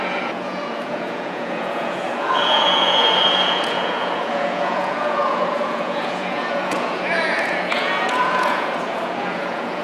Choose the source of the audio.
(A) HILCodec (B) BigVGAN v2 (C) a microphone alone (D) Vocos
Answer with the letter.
D